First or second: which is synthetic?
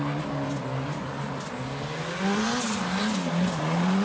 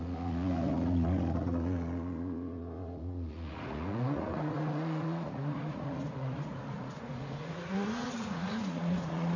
second